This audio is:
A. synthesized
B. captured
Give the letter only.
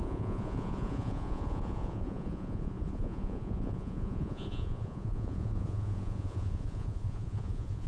A